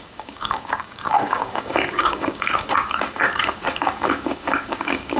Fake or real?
fake